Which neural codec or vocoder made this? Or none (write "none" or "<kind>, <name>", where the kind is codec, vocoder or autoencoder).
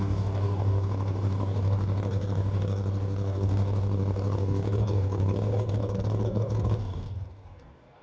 codec, DAC